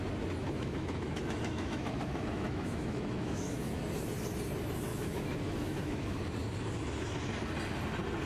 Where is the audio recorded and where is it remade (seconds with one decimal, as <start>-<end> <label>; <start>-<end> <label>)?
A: 0.0-0.4 recorded; 0.4-3.8 remade; 3.8-4.9 recorded; 4.9-6.2 remade; 6.2-8.3 recorded